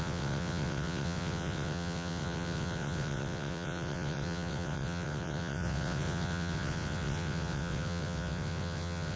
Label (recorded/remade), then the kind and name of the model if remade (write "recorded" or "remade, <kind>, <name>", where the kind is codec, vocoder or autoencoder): remade, vocoder, WaveNeXt